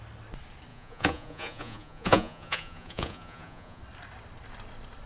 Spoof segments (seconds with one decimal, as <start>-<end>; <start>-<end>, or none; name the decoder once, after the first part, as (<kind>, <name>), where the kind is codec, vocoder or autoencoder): 0.7-3.8 (vocoder, Vocos)

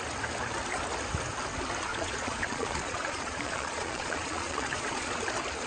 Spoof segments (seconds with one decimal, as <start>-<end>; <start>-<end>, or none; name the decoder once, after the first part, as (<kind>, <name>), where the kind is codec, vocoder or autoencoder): 1.9-5.1 (vocoder, Vocos)

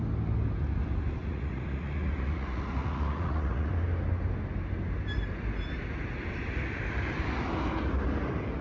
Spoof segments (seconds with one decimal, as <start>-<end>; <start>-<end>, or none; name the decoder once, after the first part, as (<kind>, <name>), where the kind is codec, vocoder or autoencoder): 1.2-3.7 (vocoder, Vocos)

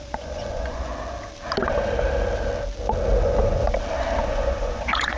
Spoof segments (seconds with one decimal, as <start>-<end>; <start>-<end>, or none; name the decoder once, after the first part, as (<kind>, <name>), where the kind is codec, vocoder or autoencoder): 0.0-0.9 (vocoder, Vocos); 3.2-3.6; 4.2-5.2

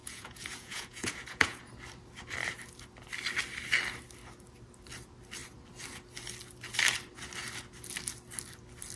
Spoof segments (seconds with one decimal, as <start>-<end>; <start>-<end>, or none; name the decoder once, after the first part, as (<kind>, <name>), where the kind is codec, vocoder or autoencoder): 0.0-1.6 (vocoder, Vocos)

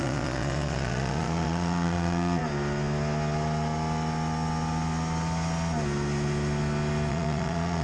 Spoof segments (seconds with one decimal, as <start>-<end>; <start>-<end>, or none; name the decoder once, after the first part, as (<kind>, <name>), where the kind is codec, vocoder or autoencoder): 0.0-2.4 (vocoder, Vocos); 7.1-7.8